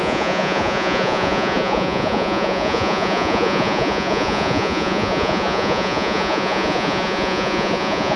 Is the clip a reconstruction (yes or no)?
yes